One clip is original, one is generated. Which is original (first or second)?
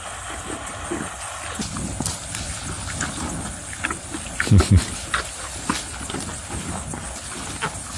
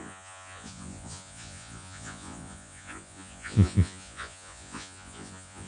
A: first